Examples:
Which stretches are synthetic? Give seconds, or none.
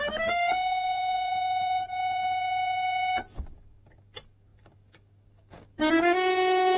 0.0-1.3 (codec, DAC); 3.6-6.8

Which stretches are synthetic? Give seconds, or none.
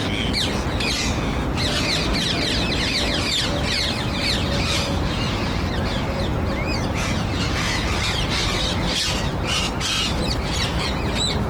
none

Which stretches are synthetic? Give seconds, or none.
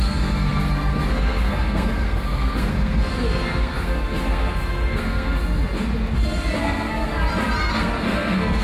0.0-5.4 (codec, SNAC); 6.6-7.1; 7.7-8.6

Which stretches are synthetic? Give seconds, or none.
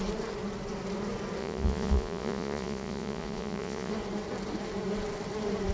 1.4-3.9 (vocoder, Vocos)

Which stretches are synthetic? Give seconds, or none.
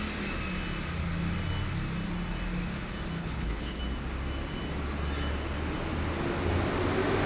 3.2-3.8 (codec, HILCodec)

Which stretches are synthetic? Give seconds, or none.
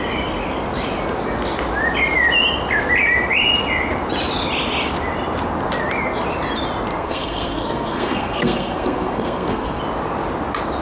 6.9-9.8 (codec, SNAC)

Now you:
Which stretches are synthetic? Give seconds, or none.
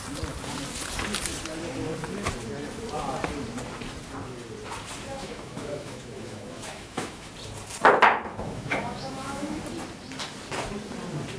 5.1-7.3 (autoencoder, DAC-VAE); 8.3-9.6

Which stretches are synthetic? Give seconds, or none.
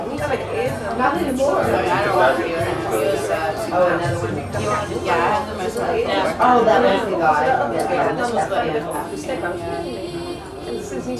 6.9-8.1 (autoencoder, DAC-VAE)